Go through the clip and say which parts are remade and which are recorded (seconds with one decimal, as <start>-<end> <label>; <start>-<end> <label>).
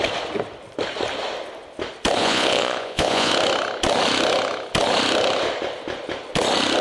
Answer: 0.0-2.2 recorded; 2.2-3.3 remade; 3.3-6.8 recorded